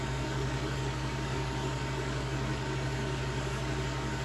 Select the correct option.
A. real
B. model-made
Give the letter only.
B